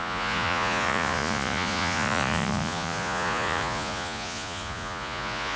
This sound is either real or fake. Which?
fake